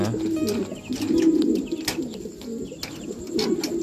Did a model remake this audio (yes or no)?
no